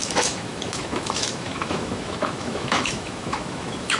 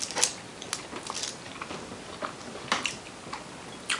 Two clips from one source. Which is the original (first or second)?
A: second